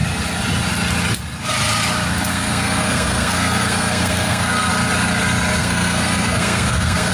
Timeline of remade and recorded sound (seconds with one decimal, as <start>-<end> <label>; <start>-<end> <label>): 0.0-2.3 recorded; 2.3-4.7 remade; 4.7-5.6 recorded; 5.6-7.1 remade